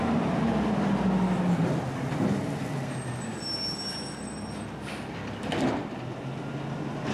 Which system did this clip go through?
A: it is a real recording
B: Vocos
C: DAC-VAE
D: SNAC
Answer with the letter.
A